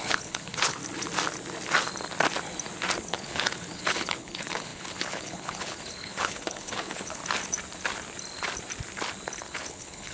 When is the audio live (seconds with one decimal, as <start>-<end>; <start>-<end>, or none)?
0.8-3.1; 7.2-9.4